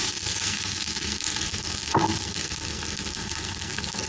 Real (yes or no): no